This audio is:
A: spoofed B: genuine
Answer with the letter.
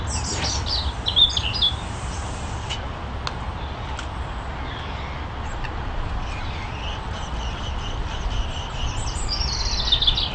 B